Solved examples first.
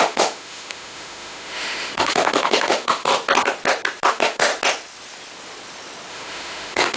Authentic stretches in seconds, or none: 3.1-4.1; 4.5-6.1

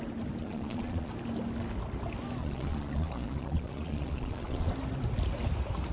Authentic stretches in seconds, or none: 0.0-0.4; 1.1-2.4; 4.7-5.9

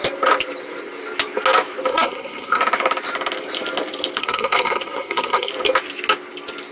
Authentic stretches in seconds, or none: 0.0-1.9; 2.6-4.2; 5.5-6.7

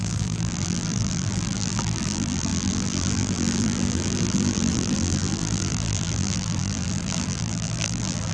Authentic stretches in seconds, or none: none

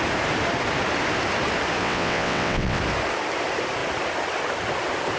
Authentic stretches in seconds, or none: 0.0-1.8; 2.8-5.2

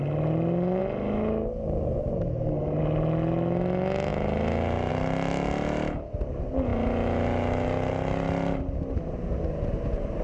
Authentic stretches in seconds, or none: 0.0-10.2

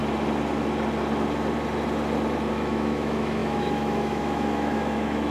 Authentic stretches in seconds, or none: 0.0-2.5

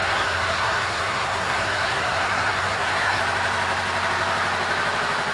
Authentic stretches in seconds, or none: 3.2-5.3